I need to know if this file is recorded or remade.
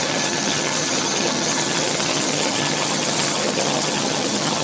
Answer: remade